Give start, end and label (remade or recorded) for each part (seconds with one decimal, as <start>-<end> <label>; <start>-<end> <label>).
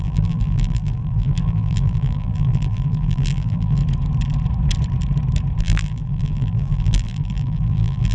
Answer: 0.0-3.8 remade; 3.8-5.6 recorded; 5.6-8.1 remade